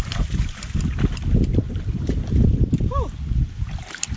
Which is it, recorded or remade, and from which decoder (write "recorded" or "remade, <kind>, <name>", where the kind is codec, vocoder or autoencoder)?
recorded